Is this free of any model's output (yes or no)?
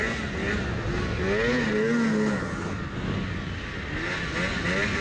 yes